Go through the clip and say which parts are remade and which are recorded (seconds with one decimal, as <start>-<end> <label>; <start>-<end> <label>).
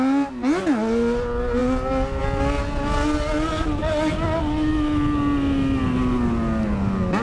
0.0-7.2 recorded